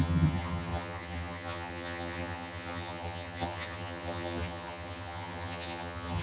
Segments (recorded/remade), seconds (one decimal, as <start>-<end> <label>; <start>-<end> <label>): 0.0-6.2 remade